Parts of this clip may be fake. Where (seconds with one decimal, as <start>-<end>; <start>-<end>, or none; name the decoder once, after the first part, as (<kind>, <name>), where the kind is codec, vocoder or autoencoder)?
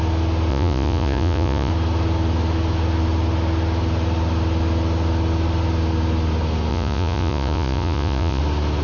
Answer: 0.5-1.7 (vocoder, Vocos); 6.7-8.4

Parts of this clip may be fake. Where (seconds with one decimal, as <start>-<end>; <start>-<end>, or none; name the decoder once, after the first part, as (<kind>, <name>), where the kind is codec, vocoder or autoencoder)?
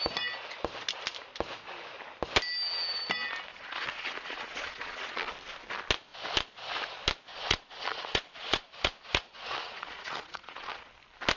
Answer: 3.5-5.3 (vocoder, Vocos); 7.3-10.9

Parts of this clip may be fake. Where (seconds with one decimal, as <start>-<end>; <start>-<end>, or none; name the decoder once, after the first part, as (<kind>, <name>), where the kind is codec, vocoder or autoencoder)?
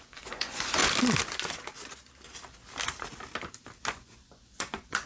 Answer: 0.0-0.8 (vocoder, Vocos); 3.9-5.1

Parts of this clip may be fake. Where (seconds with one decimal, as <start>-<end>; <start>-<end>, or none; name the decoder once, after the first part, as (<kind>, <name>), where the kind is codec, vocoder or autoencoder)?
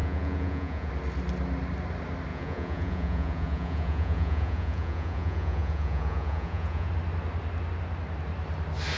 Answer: 0.0-0.9 (vocoder, Vocos); 2.3-6.9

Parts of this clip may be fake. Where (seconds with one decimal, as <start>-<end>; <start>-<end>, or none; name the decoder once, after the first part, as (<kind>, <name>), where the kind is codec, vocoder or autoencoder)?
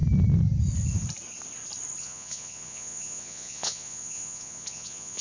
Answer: 2.0-5.2 (vocoder, Vocos)